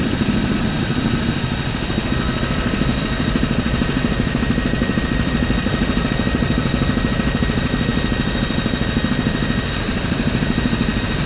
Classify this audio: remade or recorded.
remade